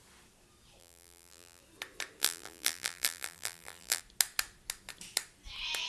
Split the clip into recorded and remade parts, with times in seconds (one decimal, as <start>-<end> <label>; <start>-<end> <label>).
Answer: 0.0-0.8 recorded; 0.8-1.6 remade; 1.6-2.2 recorded; 2.2-4.0 remade; 4.0-5.9 recorded

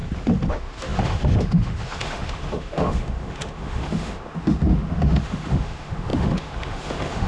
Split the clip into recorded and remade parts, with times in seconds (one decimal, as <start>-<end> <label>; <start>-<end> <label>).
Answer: 0.0-0.5 recorded; 0.5-7.3 remade

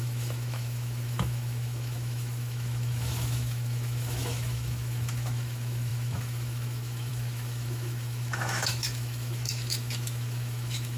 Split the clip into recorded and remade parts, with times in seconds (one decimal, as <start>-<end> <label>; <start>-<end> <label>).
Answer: 0.0-11.0 remade

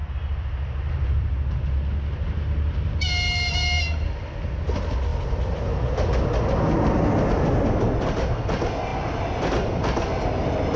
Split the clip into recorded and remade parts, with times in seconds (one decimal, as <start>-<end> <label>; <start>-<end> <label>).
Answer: 0.0-10.8 recorded

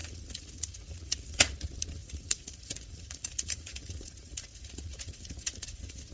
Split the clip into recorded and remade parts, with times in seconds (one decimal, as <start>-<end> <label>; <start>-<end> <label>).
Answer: 0.0-1.5 remade; 1.5-2.0 recorded; 2.0-6.1 remade